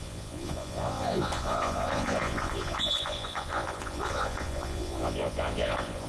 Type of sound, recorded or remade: remade